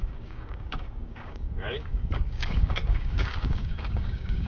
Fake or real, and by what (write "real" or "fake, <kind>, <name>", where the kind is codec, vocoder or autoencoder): fake, codec, DAC